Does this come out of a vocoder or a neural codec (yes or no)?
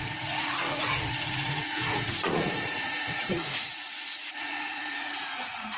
yes